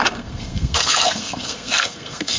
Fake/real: fake